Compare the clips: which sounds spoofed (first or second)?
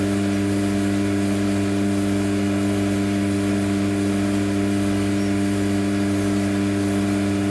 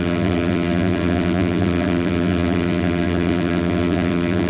second